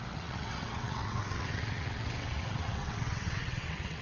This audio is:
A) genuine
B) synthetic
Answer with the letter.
B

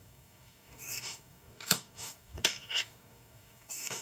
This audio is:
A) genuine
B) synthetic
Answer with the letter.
B